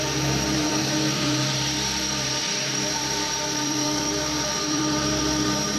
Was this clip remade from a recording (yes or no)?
yes